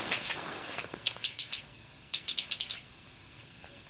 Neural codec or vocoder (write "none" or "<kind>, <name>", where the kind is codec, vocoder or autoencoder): codec, SNAC